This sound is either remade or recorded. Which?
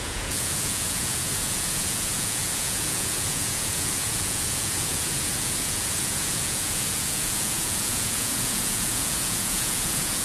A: remade